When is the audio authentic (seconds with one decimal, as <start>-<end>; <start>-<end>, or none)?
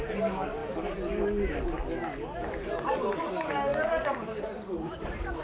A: none